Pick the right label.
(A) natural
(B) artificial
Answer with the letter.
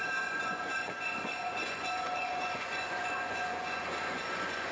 B